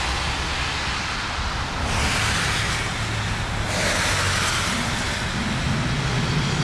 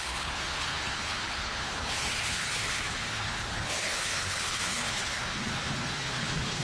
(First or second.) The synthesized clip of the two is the second